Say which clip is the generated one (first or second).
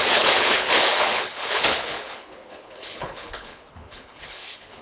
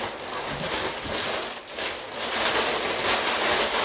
first